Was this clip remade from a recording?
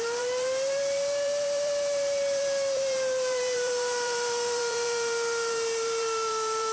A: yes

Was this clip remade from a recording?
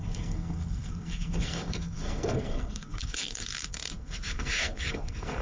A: yes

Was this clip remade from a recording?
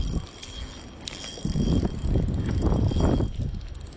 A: no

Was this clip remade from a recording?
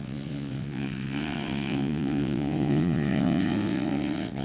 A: yes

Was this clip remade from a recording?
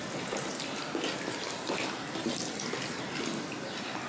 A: no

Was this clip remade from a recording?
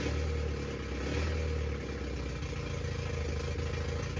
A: no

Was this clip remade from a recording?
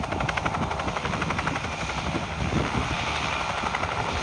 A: no